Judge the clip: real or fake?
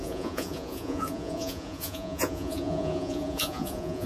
fake